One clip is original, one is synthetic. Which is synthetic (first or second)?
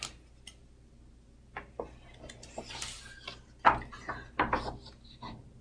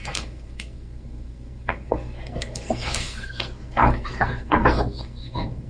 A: second